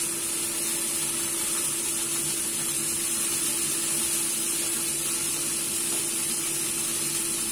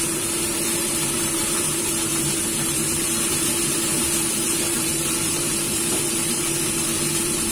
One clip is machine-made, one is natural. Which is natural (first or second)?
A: first